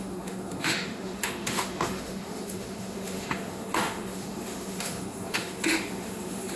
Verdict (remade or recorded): remade